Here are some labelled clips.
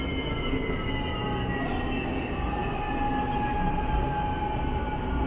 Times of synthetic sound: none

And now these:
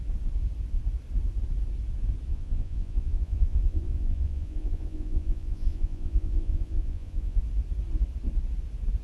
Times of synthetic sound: 2.3-7.4 (vocoder, Vocos)

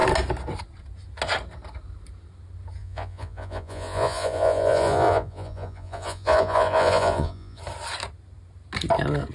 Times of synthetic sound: 2.8-7.6 (vocoder, Vocos)

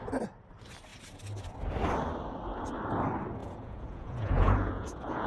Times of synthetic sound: 3.4-5.3 (vocoder, Vocos)

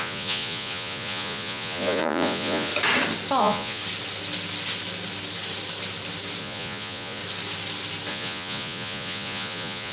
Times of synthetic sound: 0.0-2.7 (vocoder, Vocos); 3.4-3.8; 6.4-7.2; 8.1-9.9

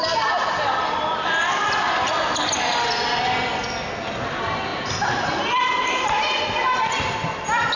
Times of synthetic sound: none

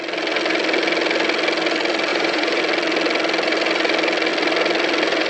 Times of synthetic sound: 2.1-2.6 (vocoder, Vocos)